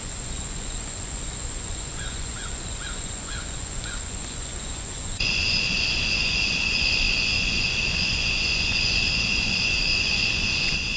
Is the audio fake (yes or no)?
yes